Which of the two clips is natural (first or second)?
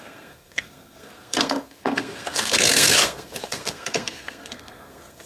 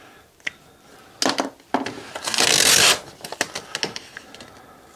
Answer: second